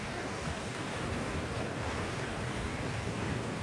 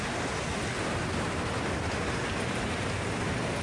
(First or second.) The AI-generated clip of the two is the first